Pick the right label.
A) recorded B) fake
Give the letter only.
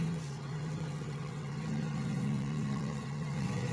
B